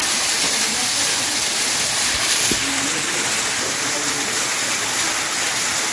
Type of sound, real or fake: real